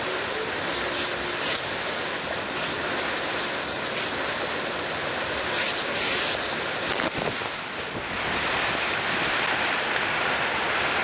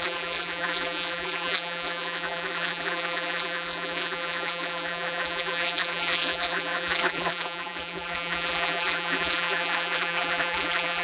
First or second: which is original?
first